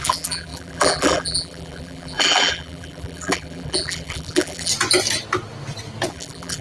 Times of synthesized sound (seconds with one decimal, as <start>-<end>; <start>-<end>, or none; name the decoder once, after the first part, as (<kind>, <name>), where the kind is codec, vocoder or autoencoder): 0.0-4.7 (vocoder, BigVGAN v2); 6.1-6.6